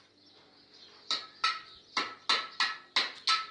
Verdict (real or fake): real